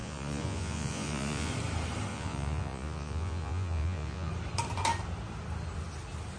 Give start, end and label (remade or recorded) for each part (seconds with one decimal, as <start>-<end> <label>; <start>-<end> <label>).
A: 0.0-1.5 remade; 1.5-2.1 recorded; 2.1-4.3 remade; 4.3-6.4 recorded